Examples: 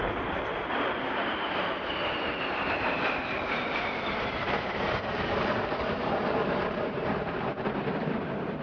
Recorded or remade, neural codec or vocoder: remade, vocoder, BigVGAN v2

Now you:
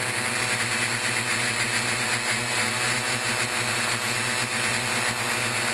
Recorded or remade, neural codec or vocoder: recorded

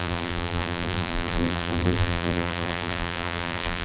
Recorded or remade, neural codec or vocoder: remade, vocoder, BigVGAN v2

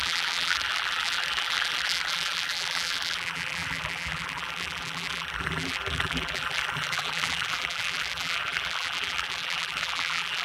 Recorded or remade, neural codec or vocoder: remade, vocoder, BigVGAN v2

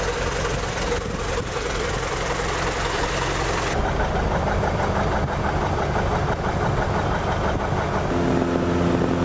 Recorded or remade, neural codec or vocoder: recorded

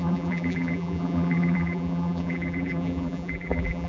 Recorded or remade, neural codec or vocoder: remade, vocoder, BigVGAN v2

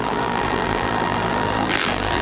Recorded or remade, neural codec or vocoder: remade, vocoder, BigVGAN v2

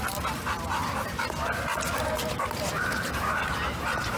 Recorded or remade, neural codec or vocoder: remade, vocoder, BigVGAN v2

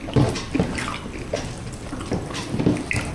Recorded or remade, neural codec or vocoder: recorded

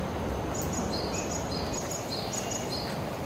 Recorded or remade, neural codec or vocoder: recorded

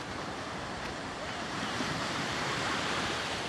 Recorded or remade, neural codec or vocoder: remade, vocoder, BigVGAN v2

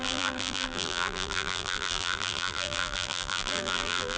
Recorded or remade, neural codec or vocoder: remade, vocoder, BigVGAN v2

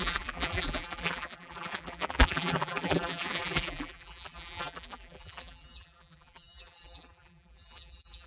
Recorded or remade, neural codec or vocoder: remade, vocoder, BigVGAN v2